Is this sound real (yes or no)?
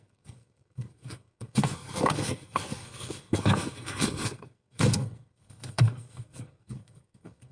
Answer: no